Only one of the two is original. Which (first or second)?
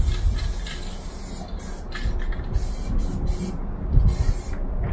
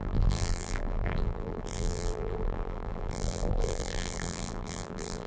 first